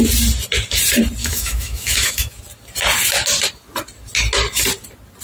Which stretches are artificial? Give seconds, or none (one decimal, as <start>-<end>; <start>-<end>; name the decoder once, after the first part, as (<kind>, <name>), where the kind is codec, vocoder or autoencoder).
1.2-2.4 (autoencoder, DAC-VAE)